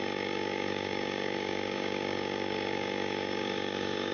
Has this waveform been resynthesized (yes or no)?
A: yes